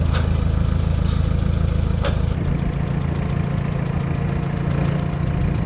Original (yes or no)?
yes